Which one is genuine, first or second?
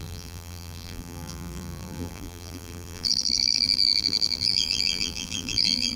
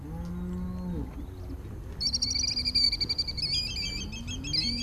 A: second